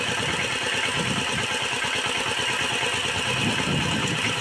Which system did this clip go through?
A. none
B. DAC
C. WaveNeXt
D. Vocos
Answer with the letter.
A